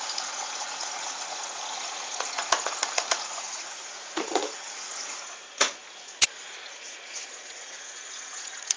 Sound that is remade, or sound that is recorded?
remade